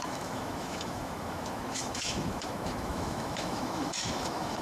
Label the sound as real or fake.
fake